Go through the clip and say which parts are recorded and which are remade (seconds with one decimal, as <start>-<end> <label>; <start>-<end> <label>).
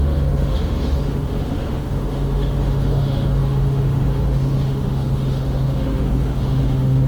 0.0-7.1 remade